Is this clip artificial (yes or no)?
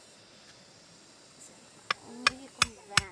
no